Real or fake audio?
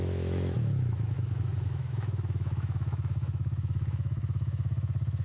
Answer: fake